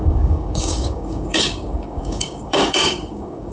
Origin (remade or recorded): remade